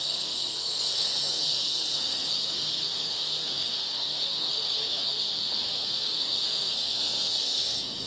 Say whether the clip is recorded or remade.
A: remade